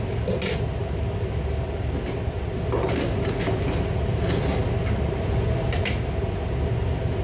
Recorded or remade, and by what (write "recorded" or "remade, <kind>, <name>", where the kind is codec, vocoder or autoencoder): recorded